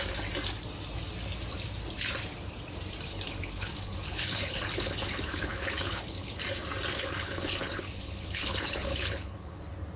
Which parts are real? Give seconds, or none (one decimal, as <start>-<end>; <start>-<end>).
0.0-3.1; 6.4-6.9; 9.6-10.0